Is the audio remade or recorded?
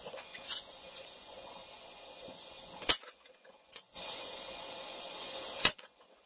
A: remade